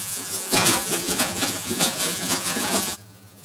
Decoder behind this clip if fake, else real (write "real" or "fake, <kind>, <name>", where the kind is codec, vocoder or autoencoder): fake, vocoder, Vocos